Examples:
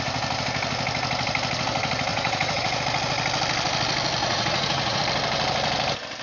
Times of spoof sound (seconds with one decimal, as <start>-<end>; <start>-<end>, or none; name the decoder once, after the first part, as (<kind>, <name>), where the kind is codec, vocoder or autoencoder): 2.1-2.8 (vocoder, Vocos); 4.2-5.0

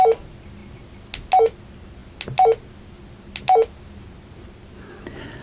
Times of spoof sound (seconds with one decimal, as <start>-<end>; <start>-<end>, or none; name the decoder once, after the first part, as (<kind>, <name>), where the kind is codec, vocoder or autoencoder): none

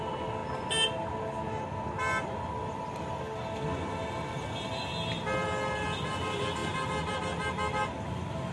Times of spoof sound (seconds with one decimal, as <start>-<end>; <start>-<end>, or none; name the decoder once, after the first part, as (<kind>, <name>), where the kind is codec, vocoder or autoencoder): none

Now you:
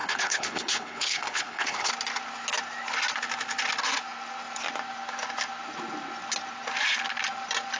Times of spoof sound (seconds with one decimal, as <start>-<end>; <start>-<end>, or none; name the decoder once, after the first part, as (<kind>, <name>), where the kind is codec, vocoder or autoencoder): 0.0-1.9 (codec, HILCodec)

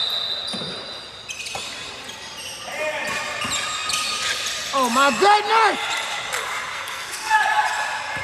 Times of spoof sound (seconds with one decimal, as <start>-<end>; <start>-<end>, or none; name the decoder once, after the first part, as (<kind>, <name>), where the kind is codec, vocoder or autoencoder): 6.7-7.4 (codec, SNAC)

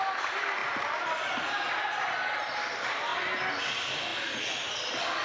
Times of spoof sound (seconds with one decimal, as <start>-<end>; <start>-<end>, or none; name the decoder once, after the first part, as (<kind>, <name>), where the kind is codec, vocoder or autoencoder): none